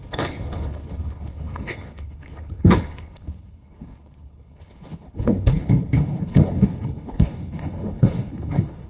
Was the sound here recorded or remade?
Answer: remade